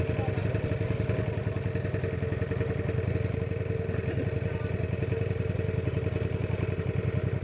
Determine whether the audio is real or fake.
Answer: real